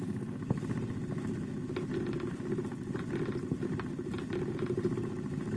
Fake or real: real